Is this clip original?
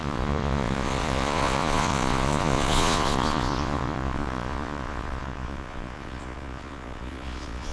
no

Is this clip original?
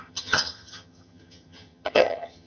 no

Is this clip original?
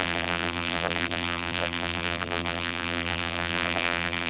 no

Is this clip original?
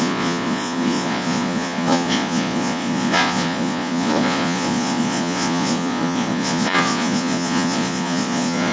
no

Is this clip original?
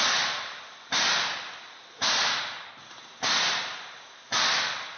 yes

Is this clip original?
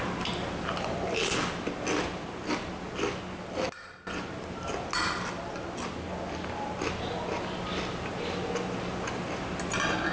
yes